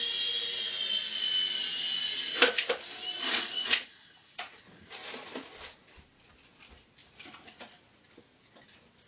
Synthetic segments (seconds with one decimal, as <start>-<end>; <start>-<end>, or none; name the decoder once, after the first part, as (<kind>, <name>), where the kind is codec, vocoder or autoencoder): 3.2-4.6 (vocoder, Vocos); 7.0-7.6